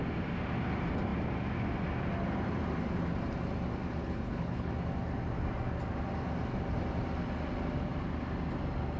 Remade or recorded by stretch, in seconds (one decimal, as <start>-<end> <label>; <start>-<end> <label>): 0.0-4.0 recorded; 4.0-4.7 remade; 4.7-9.0 recorded